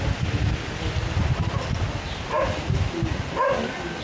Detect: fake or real real